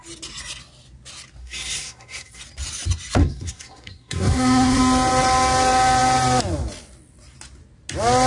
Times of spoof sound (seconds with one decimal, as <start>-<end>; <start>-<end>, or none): 1.4-2.4; 3.2-4.8